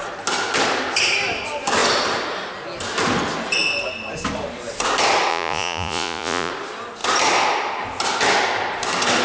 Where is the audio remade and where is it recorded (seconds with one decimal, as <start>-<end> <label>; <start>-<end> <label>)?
0.0-5.3 recorded; 5.3-6.5 remade; 6.5-9.2 recorded